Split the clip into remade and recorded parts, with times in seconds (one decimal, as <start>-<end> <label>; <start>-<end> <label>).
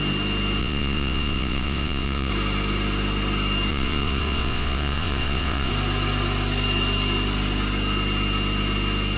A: 0.0-0.6 recorded; 0.6-2.3 remade; 2.3-3.7 recorded; 3.7-5.7 remade; 5.7-9.2 recorded